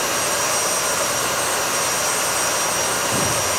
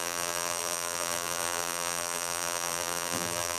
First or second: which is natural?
first